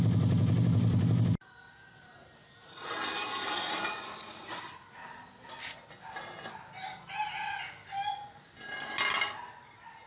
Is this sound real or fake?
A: real